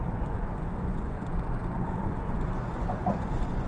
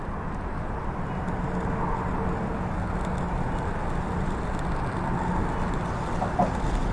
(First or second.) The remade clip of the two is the first